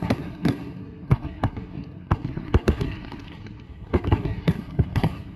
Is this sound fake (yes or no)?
yes